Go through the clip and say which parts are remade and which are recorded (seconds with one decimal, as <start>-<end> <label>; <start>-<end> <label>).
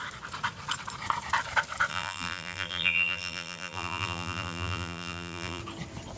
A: 0.0-1.9 recorded; 1.9-5.6 remade; 5.6-6.2 recorded